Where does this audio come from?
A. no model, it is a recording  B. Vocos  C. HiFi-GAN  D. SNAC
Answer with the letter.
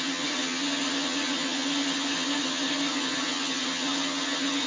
C